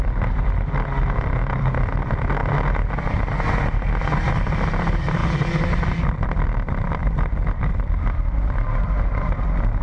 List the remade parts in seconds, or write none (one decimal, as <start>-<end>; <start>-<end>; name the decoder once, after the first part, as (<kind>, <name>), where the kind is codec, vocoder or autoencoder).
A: 0.0-2.4 (vocoder, BigVGAN v2); 4.0-5.2; 5.7-9.8